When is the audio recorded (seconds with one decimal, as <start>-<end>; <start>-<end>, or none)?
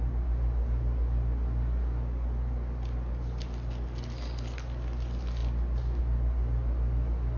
0.0-7.4